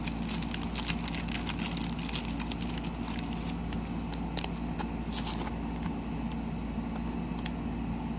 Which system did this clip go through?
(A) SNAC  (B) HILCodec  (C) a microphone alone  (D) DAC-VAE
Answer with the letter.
C